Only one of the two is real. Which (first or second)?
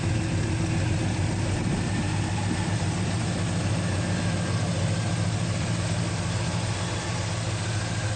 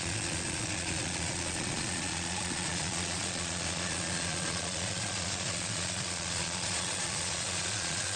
first